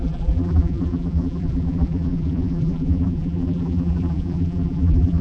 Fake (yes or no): yes